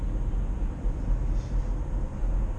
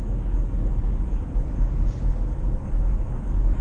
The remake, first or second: second